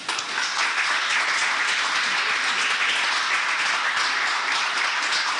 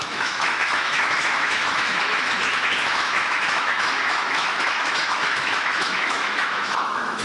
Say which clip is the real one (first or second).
first